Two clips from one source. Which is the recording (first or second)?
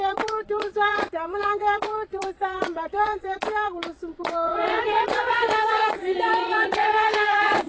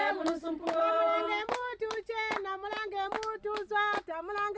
second